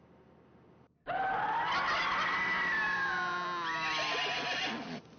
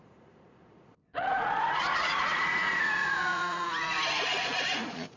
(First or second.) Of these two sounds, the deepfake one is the second